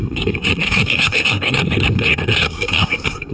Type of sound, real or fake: fake